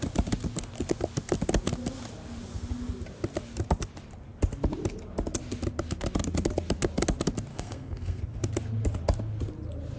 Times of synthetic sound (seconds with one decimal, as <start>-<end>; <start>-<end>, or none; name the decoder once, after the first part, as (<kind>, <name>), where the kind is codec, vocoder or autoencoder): 7.5-8.2 (codec, SNAC)